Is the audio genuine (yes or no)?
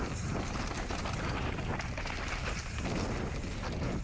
yes